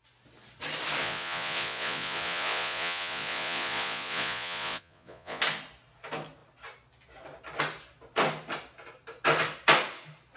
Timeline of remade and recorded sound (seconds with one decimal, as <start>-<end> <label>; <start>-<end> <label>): 0.0-1.0 recorded; 1.0-5.4 remade; 5.4-10.4 recorded